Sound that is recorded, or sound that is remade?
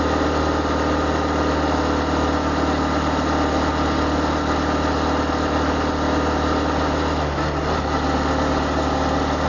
recorded